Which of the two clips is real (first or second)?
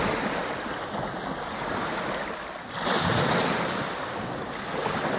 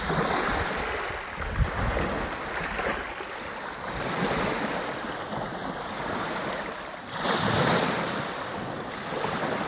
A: first